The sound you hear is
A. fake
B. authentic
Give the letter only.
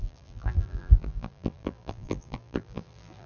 A